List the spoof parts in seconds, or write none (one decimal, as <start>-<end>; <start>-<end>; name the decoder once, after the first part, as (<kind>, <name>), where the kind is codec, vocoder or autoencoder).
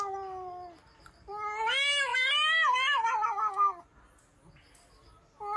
none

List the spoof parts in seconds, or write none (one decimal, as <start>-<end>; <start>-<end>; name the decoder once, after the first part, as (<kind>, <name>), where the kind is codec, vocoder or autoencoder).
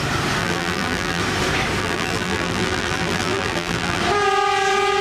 0.4-1.2 (vocoder, BigVGAN v2); 1.8-4.0